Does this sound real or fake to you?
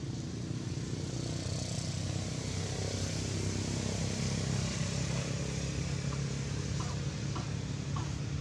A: real